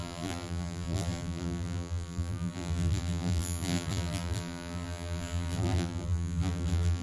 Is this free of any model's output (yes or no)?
no